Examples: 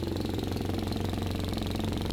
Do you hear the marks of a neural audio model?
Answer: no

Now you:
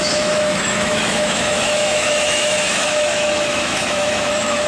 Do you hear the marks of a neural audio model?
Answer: yes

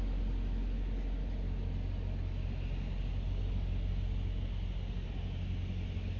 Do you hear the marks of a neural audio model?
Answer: no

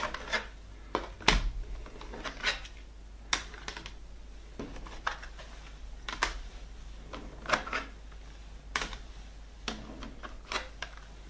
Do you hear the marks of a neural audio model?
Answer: no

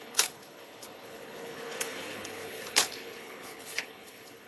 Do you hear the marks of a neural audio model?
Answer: yes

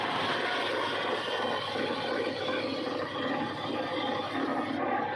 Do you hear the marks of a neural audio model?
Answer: no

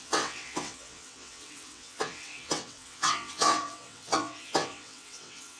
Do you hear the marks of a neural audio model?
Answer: yes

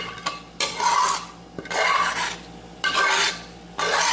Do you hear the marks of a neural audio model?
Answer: no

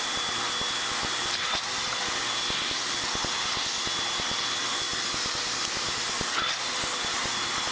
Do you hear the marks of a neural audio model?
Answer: no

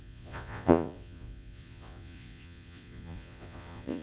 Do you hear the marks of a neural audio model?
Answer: yes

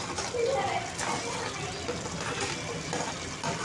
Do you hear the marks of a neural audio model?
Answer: no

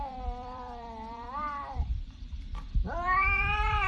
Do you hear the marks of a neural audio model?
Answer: yes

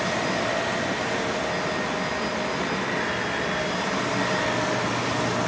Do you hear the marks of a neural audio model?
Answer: no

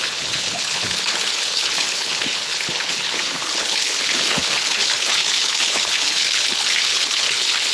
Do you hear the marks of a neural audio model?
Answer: yes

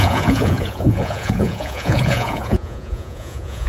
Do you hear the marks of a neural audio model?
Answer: yes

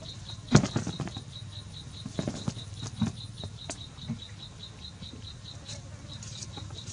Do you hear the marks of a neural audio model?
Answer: no